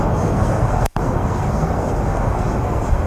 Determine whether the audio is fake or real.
fake